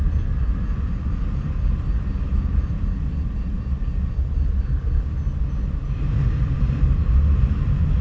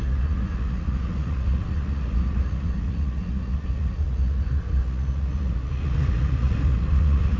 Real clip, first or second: first